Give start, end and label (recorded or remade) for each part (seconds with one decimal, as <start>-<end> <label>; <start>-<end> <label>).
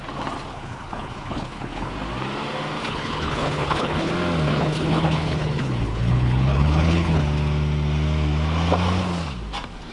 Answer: 0.0-0.5 recorded; 0.5-1.9 remade; 1.9-2.8 recorded; 2.8-4.1 remade; 4.1-4.5 recorded; 4.5-7.2 remade; 7.2-9.9 recorded